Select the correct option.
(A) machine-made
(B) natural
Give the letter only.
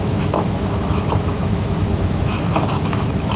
A